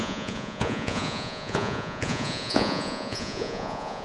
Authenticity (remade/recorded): remade